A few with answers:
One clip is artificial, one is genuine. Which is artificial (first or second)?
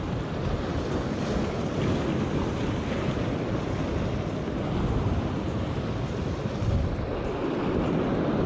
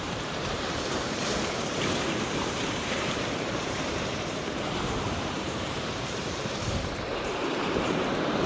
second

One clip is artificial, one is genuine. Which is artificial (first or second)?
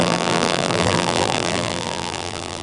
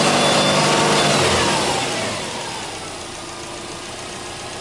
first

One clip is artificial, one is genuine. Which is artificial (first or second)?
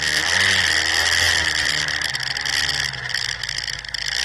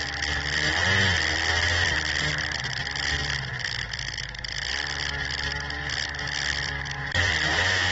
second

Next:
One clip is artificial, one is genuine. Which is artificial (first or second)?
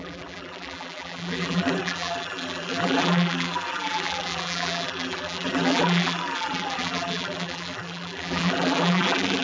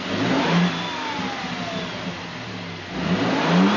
first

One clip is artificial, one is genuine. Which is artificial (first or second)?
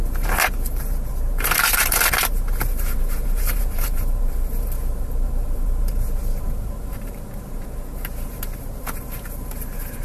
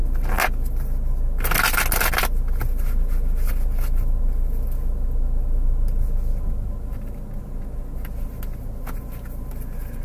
first